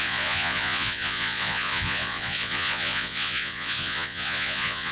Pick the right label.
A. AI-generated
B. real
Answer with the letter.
A